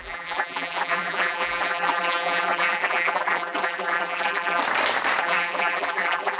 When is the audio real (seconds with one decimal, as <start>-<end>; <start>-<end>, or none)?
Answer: 4.6-5.2